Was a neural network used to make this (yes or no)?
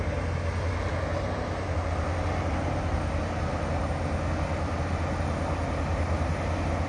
no